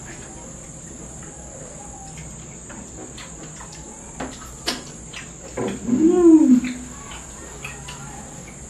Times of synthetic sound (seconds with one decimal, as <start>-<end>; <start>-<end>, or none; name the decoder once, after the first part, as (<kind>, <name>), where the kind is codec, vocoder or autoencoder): none